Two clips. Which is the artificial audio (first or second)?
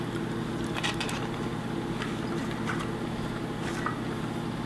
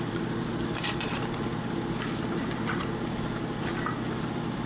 second